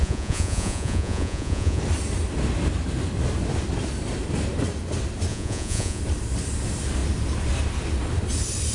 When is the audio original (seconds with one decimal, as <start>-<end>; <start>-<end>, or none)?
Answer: 1.8-5.3; 6.0-8.7